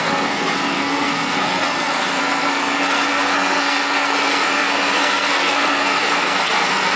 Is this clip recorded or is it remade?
remade